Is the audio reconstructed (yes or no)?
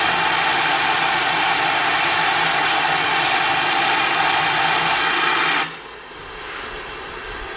no